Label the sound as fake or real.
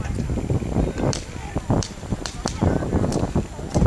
fake